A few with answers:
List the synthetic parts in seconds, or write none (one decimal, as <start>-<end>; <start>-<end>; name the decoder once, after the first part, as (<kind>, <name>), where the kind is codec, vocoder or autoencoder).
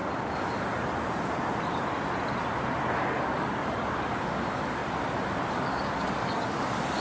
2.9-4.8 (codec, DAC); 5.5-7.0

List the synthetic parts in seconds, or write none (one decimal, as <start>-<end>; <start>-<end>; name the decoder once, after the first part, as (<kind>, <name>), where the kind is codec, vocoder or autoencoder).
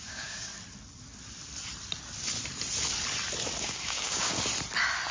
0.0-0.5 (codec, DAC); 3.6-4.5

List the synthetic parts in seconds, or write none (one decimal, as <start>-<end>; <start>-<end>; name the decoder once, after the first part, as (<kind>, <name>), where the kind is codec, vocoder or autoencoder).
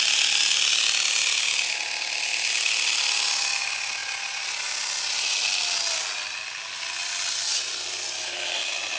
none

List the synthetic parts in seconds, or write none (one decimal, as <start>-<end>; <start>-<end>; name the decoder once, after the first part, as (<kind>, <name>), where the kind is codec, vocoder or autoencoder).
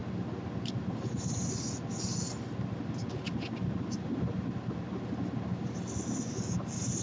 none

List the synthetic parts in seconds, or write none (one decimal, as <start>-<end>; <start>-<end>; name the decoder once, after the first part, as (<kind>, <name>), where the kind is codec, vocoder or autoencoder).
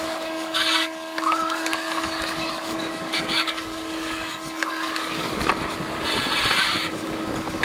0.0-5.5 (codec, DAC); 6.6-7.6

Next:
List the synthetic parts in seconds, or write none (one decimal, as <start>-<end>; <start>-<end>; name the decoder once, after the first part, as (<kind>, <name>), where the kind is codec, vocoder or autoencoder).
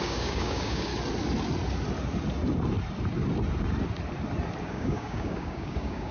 0.0-0.9 (codec, DAC); 4.6-6.1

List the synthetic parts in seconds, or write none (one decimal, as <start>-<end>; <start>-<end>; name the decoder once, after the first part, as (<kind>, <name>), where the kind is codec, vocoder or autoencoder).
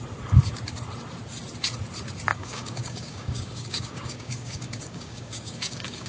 2.3-6.1 (codec, DAC)